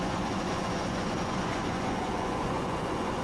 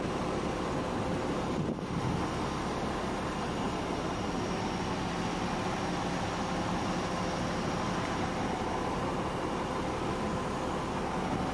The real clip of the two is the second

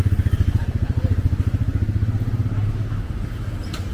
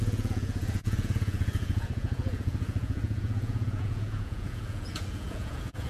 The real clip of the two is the first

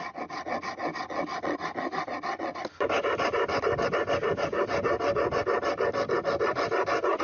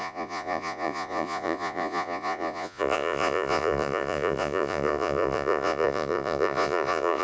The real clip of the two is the first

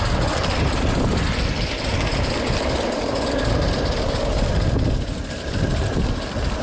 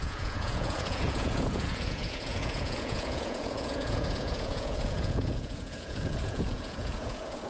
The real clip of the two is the first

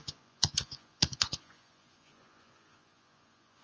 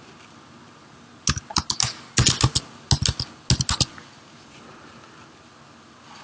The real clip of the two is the second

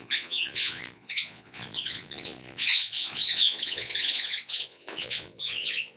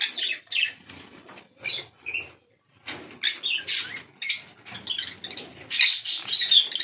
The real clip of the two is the second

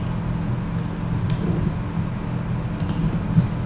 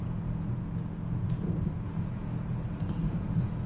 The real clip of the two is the first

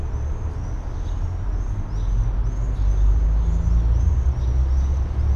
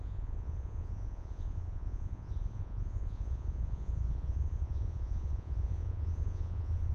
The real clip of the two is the first